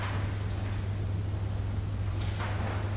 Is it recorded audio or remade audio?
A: recorded